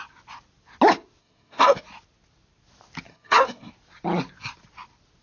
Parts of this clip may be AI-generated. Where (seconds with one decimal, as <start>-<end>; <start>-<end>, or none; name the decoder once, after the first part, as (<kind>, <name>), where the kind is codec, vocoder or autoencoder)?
1.2-1.8 (codec, SNAC); 3.1-3.7